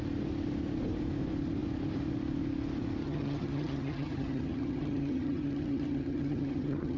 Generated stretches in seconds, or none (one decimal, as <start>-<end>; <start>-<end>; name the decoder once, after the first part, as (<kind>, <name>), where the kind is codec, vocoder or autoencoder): 3.0-7.0 (vocoder, HiFi-GAN)